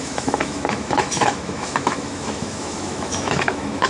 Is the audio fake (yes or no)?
yes